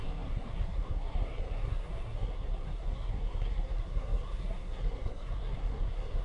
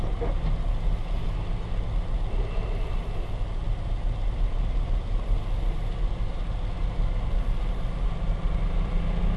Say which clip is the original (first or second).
second